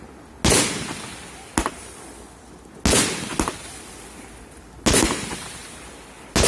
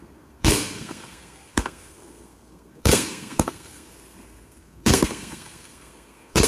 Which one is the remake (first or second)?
second